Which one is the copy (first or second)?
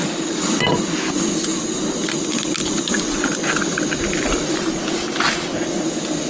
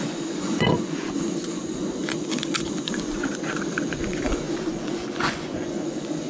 second